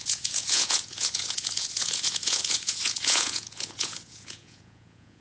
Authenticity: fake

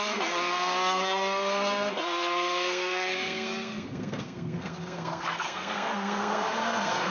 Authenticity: fake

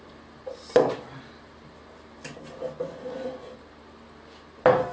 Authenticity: real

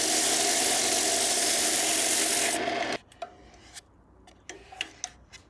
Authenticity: real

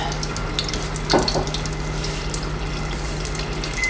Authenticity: real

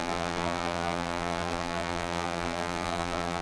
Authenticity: fake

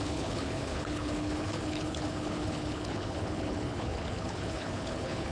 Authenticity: fake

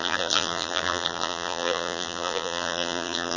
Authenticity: fake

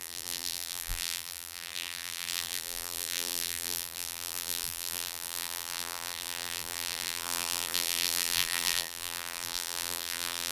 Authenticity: fake